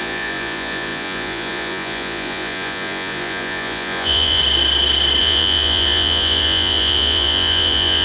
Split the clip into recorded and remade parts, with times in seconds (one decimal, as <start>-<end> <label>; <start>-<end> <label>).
0.0-4.4 remade; 4.4-5.2 recorded; 5.2-8.0 remade